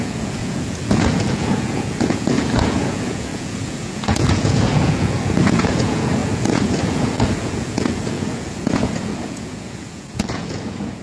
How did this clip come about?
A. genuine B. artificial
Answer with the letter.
B